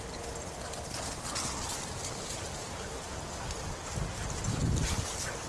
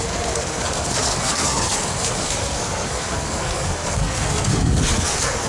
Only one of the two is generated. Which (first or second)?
second